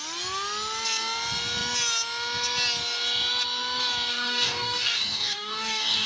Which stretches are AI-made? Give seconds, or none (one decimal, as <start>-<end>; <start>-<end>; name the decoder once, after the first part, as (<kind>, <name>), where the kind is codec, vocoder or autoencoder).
4.1-6.1 (codec, DAC)